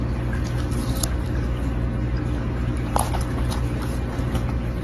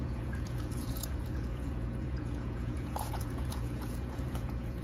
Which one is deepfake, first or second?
second